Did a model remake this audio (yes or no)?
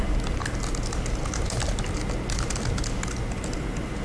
no